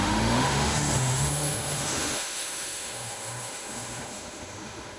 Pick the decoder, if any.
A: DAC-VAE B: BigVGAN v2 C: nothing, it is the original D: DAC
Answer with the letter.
A